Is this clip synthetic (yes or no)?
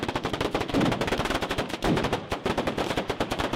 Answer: yes